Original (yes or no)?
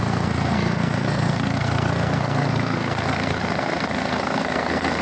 no